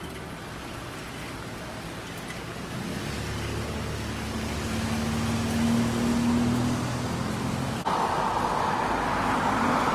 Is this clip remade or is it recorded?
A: recorded